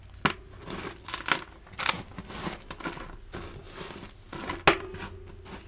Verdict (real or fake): real